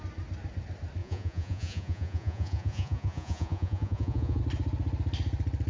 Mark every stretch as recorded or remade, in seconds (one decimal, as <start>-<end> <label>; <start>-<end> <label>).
0.0-1.0 recorded; 1.0-4.4 remade; 4.4-5.7 recorded